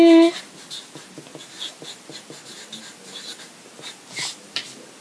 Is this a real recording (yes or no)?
yes